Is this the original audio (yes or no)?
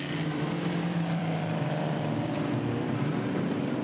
no